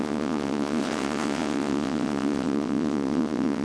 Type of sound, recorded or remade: remade